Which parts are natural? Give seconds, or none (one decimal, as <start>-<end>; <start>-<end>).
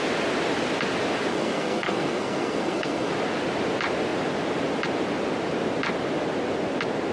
0.0-1.3; 3.1-7.1